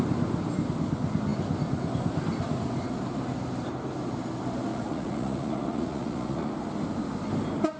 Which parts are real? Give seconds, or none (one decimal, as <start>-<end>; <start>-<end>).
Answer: 0.0-4.7; 6.5-7.8